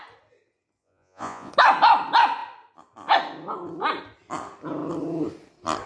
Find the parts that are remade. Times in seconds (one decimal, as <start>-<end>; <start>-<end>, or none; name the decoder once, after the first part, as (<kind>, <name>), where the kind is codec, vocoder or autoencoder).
0.8-1.5 (vocoder, Vocos)